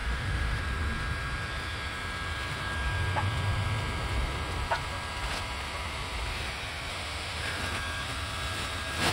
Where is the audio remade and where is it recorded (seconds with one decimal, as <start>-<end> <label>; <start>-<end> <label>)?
0.0-0.6 remade; 0.6-6.9 recorded; 6.9-7.6 remade; 7.6-9.1 recorded